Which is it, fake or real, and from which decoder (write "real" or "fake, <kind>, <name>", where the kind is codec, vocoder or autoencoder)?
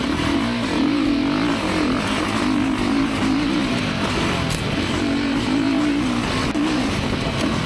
real